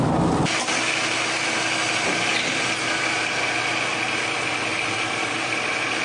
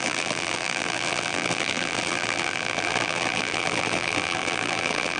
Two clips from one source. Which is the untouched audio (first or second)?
first